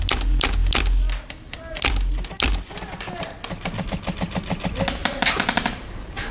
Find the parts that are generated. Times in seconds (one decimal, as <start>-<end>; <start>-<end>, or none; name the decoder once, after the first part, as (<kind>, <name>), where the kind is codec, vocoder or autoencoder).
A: 5.0-6.3 (vocoder, BigVGAN v2)